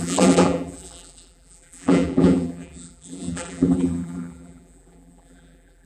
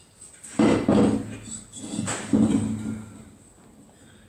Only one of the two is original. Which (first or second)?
second